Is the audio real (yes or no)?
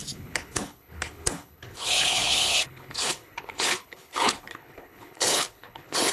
no